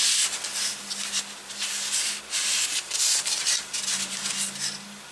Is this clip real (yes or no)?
yes